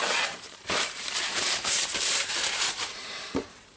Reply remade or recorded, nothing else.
remade